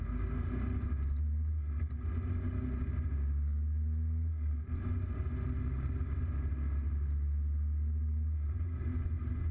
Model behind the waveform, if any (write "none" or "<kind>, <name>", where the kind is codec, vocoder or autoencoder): none